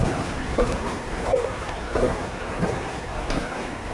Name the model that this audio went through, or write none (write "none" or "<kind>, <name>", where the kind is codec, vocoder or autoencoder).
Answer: codec, SNAC